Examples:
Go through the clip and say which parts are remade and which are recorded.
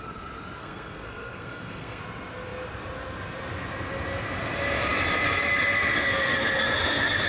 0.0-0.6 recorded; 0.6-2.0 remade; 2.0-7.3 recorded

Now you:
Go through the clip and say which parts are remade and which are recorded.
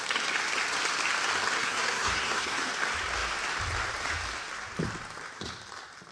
0.0-1.6 recorded; 1.6-2.7 remade; 2.7-6.1 recorded